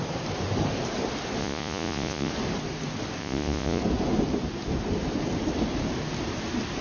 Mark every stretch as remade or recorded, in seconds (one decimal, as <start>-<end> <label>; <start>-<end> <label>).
0.0-1.4 recorded; 1.4-2.3 remade; 2.3-3.2 recorded; 3.2-3.8 remade; 3.8-6.8 recorded